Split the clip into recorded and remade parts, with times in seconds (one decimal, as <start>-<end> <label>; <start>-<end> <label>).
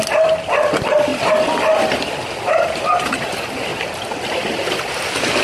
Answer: 0.0-5.4 recorded